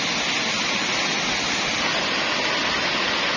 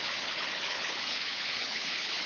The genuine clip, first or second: first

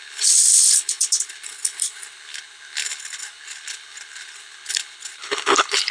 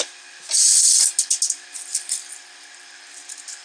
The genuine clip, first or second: second